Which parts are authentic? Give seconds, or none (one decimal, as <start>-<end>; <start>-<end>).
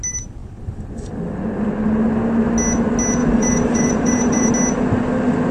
0.0-0.4; 1.1-3.2; 4.5-5.5